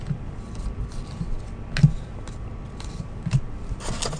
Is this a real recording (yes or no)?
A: yes